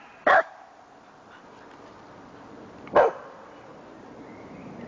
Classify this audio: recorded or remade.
recorded